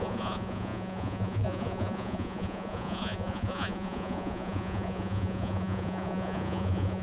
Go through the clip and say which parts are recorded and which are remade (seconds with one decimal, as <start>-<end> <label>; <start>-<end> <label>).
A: 0.0-7.0 remade